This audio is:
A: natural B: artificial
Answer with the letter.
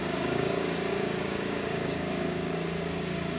B